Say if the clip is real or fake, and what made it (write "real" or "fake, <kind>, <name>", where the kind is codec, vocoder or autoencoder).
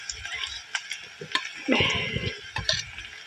real